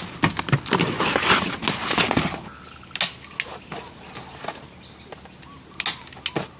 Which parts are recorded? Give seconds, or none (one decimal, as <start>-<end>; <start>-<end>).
0.0-6.6